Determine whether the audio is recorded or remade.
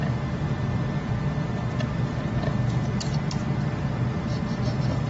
recorded